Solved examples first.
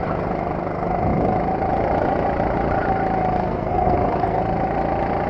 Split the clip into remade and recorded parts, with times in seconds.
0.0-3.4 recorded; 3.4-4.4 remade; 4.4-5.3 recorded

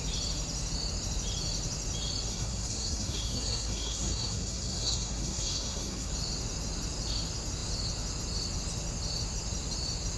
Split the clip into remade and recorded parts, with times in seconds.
0.0-2.3 recorded; 2.3-6.1 remade; 6.1-10.2 recorded